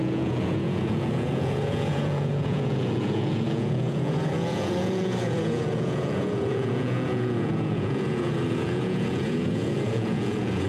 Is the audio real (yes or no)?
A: no